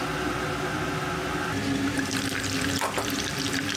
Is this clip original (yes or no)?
yes